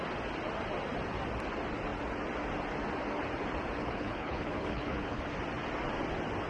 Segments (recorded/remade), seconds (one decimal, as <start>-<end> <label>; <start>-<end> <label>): 0.0-3.8 recorded; 3.8-5.2 remade; 5.2-6.5 recorded